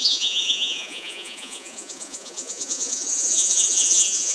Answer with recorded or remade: remade